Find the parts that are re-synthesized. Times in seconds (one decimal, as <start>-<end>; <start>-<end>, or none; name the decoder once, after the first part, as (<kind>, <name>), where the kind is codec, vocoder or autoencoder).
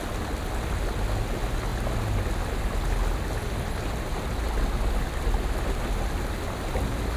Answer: none